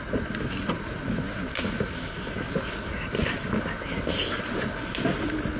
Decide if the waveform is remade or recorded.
recorded